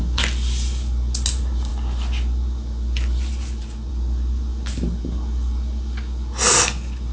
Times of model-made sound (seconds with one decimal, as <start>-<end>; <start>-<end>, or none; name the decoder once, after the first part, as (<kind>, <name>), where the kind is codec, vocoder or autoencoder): none